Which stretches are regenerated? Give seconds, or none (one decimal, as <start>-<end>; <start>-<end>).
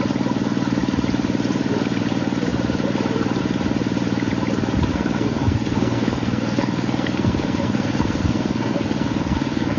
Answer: 4.9-9.8